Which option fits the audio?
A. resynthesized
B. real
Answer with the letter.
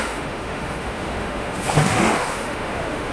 A